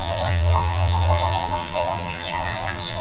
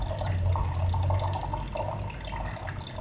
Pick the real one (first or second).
second